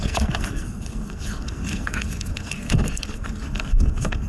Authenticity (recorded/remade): remade